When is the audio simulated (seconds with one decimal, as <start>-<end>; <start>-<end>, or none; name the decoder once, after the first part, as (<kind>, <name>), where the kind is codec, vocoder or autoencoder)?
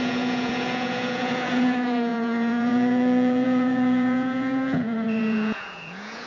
0.0-6.3 (vocoder, Vocos)